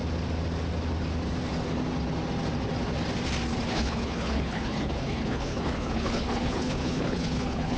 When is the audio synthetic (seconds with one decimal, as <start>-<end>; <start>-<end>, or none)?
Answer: 3.7-7.8